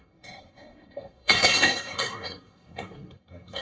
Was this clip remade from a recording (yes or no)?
yes